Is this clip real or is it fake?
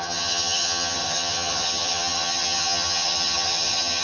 fake